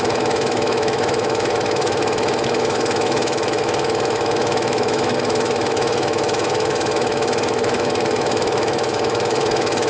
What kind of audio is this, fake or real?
fake